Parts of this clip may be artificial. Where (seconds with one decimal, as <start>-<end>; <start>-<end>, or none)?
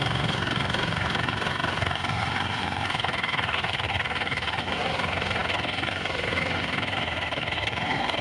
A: 0.0-8.2